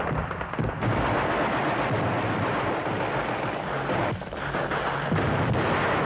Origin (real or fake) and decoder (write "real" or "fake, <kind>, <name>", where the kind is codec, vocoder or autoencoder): real